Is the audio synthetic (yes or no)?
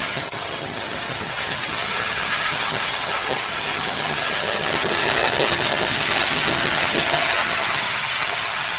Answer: yes